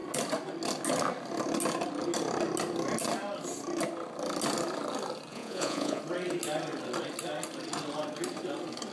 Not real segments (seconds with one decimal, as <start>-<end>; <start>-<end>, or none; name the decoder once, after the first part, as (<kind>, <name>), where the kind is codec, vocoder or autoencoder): 5.3-6.0 (vocoder, Vocos)